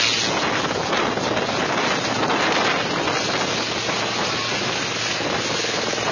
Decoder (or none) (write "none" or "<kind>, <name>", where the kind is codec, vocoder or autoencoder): none